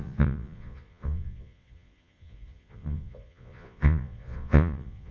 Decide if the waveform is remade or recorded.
remade